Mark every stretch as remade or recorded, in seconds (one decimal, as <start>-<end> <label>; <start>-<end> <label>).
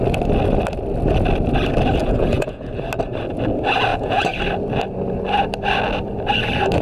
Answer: 0.0-2.0 recorded; 2.0-2.7 remade; 2.7-3.9 recorded; 3.9-4.4 remade; 4.4-6.8 recorded